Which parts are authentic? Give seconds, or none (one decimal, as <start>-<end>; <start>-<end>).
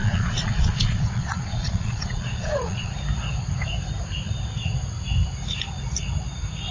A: 2.9-6.7